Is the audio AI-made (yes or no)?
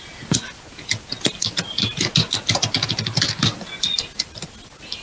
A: no